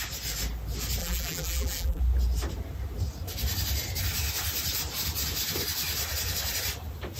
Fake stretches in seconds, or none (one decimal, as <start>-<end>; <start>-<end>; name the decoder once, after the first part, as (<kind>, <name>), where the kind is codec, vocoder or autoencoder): 1.0-2.0 (vocoder, BigVGAN v2)

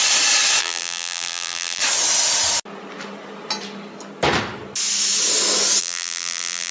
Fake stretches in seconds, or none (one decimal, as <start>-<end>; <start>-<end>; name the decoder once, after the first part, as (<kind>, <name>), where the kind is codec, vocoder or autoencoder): 0.6-1.8 (vocoder, BigVGAN v2); 5.8-6.7

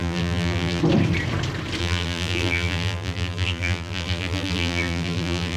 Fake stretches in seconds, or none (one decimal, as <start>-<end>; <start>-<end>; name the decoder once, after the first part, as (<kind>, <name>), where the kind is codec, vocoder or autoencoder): 0.0-0.8 (vocoder, BigVGAN v2); 1.8-5.6

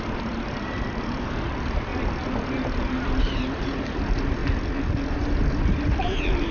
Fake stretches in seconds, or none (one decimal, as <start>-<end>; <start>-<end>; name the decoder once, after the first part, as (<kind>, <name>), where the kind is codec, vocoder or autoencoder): 0.0-1.9 (vocoder, BigVGAN v2); 3.2-4.4; 5.0-6.5

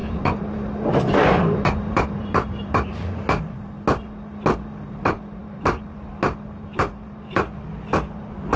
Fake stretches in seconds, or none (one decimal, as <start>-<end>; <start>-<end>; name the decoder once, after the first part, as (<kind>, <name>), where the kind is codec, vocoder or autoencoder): 0.0-3.2 (vocoder, BigVGAN v2); 5.4-6.1

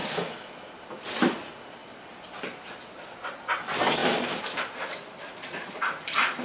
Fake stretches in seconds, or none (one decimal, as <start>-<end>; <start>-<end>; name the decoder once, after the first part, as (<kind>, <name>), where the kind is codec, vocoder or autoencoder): 1.8-3.2 (vocoder, BigVGAN v2); 4.0-5.7